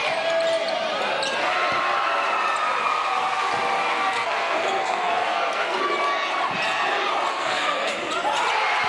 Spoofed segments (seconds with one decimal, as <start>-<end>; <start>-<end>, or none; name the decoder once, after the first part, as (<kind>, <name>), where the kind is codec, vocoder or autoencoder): 2.8-3.5 (codec, SNAC); 3.9-5.8; 7.3-7.9